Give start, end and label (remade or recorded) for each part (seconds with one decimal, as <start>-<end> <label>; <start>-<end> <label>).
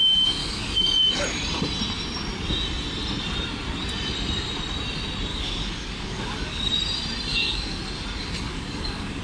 0.0-0.4 recorded; 0.4-1.1 remade; 1.1-5.3 recorded; 5.3-6.7 remade; 6.7-7.3 recorded; 7.3-7.8 remade; 7.8-8.2 recorded; 8.2-9.2 remade